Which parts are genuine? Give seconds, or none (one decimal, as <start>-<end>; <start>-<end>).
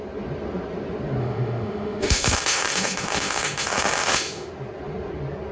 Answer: 0.0-1.2; 4.5-5.5